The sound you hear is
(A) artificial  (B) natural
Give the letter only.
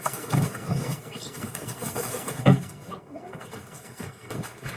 A